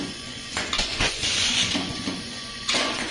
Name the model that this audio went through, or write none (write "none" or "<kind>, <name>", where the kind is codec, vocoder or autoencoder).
vocoder, Vocos